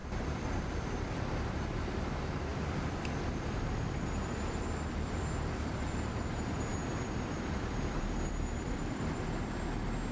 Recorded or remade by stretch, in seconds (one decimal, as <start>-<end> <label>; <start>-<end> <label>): 0.0-1.2 remade; 1.2-2.5 recorded; 2.5-6.3 remade; 6.3-6.7 recorded; 6.7-9.0 remade; 9.0-10.1 recorded